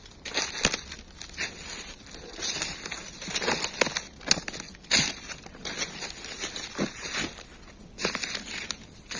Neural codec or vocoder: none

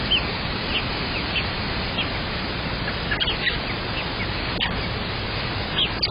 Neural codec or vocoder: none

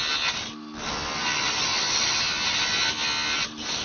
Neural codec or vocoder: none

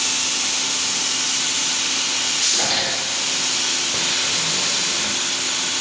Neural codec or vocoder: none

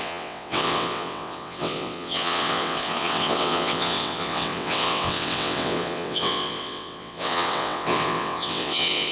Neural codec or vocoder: vocoder, WaveNeXt